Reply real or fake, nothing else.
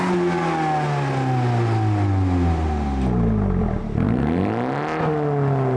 real